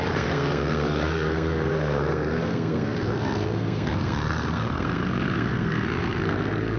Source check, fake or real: fake